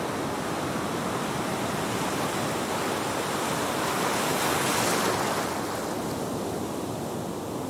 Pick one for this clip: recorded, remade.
recorded